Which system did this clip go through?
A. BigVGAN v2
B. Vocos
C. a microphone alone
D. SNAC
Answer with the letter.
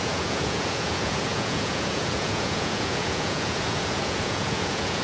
B